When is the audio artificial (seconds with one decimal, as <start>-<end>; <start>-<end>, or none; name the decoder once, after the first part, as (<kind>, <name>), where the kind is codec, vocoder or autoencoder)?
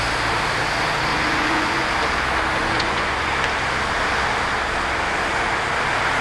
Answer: 1.1-1.9 (vocoder, Vocos); 2.6-3.3